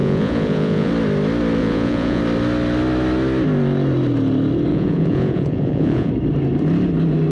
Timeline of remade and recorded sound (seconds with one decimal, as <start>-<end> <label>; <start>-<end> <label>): 0.0-0.9 remade; 0.9-1.6 recorded; 1.6-2.2 remade; 2.2-4.7 recorded; 4.7-6.1 remade; 6.1-7.3 recorded